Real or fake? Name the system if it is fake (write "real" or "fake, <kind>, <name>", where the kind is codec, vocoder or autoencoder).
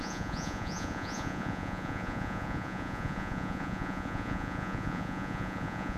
fake, vocoder, Vocos